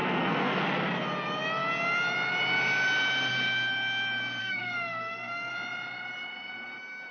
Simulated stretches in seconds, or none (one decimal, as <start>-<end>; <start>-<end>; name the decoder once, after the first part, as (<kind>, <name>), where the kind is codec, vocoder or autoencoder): 0.0-0.6 (codec, SNAC); 4.4-5.5